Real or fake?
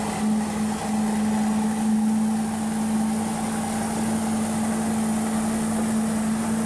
real